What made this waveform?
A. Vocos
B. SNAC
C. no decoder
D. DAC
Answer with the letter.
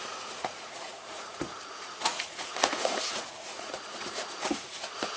A